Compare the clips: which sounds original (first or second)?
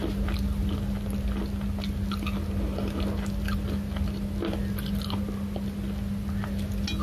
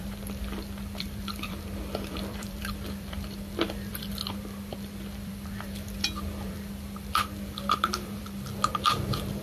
first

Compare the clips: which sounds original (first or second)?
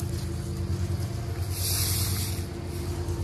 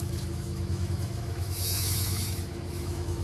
first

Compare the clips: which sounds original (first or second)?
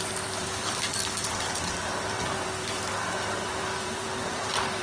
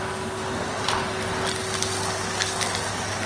second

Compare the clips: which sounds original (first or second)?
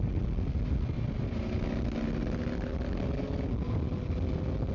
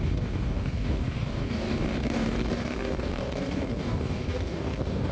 first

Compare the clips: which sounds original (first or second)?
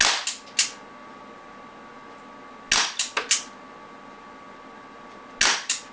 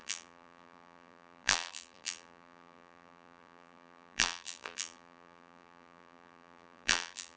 first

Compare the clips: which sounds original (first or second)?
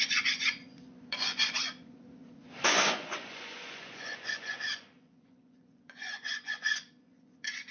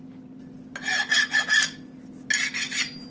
second